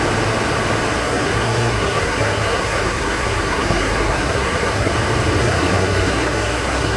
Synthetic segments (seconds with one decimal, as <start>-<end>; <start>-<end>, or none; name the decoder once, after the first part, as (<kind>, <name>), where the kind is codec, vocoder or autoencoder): 1.0-4.9 (codec, SNAC); 5.4-7.0